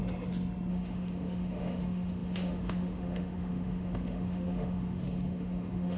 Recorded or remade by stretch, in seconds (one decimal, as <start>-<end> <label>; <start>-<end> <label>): 0.0-0.7 recorded; 0.7-6.0 remade